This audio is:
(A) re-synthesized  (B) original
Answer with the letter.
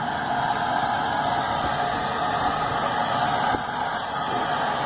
B